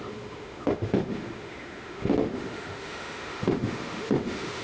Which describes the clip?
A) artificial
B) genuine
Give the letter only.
A